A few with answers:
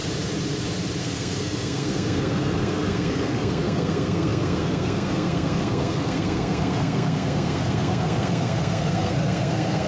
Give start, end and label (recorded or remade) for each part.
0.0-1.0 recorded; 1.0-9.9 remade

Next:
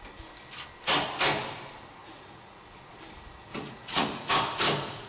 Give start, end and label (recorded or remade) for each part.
0.0-2.0 recorded; 2.0-2.6 remade; 2.6-3.5 recorded; 3.5-4.3 remade; 4.3-5.1 recorded